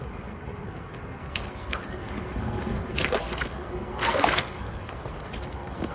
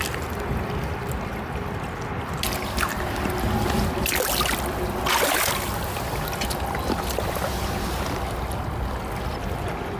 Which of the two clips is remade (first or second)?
first